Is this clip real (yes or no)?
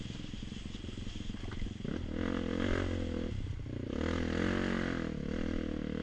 yes